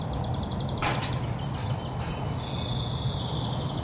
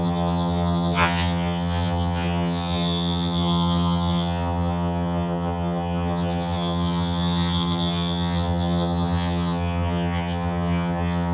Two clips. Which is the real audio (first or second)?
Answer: first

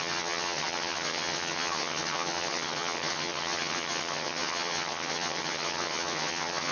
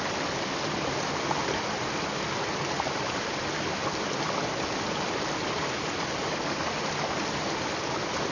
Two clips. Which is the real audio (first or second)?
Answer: second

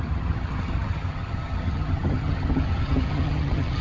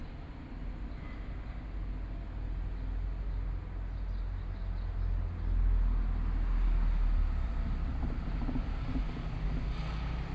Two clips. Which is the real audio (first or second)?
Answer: second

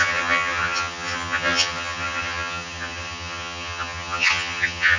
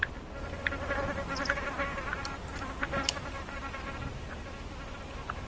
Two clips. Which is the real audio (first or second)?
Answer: second